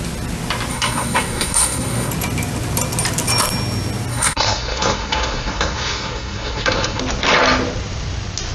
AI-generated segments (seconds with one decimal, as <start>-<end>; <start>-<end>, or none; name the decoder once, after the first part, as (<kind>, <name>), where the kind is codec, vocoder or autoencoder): 0.7-2.1 (codec, SNAC); 4.1-7.0